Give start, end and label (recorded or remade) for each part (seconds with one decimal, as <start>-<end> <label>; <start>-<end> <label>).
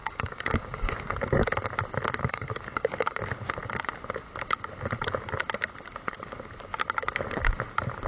0.0-0.9 remade; 0.9-2.2 recorded; 2.2-2.9 remade; 2.9-8.1 recorded